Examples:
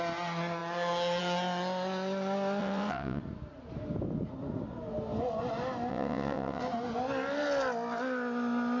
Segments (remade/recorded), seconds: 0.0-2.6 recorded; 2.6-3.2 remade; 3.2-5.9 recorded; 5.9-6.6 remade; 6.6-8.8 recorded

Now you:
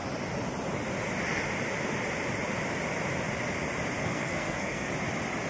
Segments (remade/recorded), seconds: 0.0-4.0 recorded; 4.0-4.9 remade; 4.9-5.5 recorded

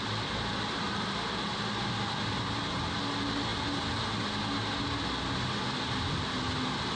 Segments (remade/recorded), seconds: 0.0-7.0 recorded

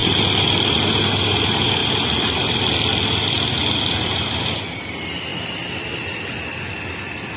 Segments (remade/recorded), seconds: 0.0-7.4 recorded